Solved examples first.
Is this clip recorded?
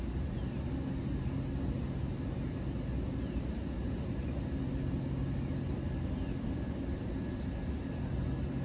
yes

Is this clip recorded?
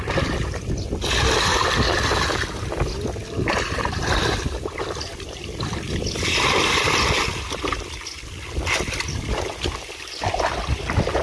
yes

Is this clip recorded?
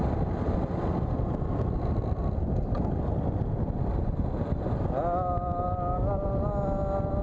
yes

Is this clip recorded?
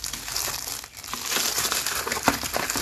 yes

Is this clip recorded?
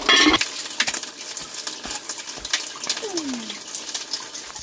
yes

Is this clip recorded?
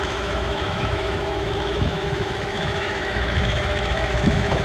no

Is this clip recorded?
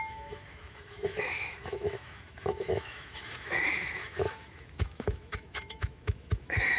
no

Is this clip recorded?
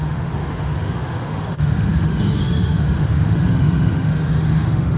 no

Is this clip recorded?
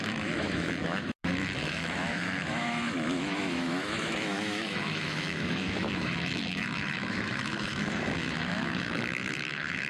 no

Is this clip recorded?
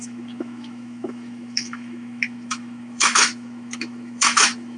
no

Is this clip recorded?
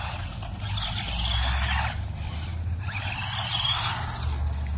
yes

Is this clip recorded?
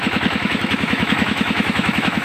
no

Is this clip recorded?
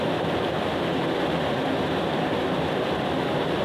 yes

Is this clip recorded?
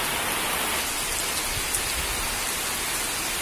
yes